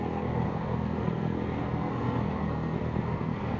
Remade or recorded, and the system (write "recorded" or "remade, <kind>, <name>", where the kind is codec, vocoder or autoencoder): remade, codec, SNAC